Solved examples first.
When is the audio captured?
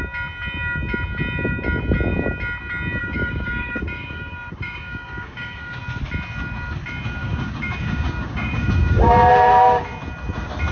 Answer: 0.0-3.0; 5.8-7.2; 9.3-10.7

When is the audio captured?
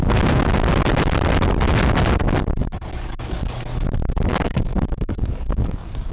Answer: 0.0-2.6; 3.6-4.3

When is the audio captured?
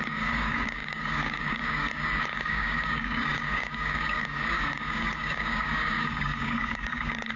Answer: none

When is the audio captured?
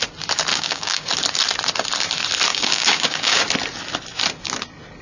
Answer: 0.0-0.5; 1.1-2.5; 3.4-5.0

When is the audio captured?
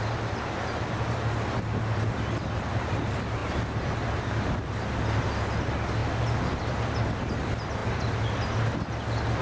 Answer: 0.0-9.4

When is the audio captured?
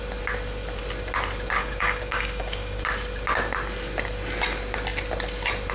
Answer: 0.0-1.6; 2.8-5.7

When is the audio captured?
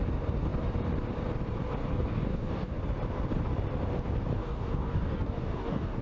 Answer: 0.0-1.9; 2.8-4.4